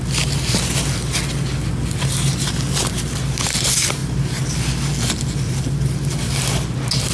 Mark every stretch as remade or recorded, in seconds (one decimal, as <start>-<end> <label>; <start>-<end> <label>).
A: 0.0-7.1 recorded